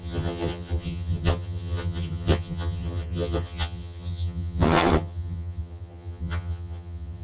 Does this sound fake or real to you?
fake